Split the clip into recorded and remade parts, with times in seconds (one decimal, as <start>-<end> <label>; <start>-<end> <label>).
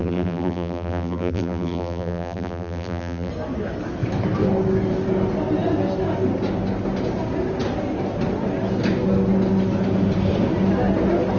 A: 0.0-3.3 remade; 3.3-11.4 recorded